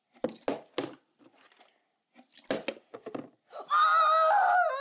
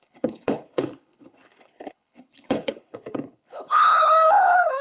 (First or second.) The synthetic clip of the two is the second